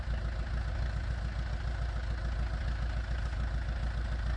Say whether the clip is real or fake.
real